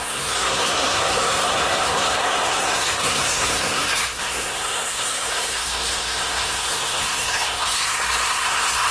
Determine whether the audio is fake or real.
fake